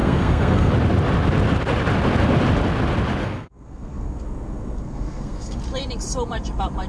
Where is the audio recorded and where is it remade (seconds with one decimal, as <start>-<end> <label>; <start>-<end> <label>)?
0.0-0.7 remade; 0.7-3.2 recorded; 3.2-5.6 remade; 5.6-6.9 recorded